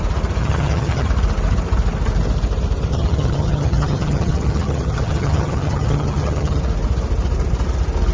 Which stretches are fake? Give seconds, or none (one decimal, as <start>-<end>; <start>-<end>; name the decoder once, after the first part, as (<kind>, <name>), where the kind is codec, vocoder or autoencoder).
0.4-1.1 (vocoder, HiFi-GAN); 2.9-6.6